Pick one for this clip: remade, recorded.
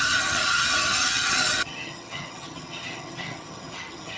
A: remade